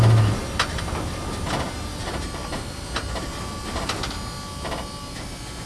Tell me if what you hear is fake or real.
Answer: real